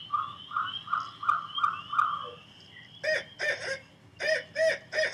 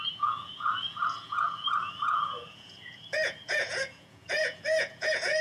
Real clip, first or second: first